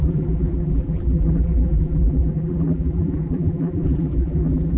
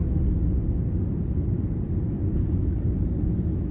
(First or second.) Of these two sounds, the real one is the second